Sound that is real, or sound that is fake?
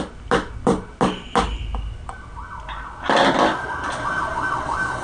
real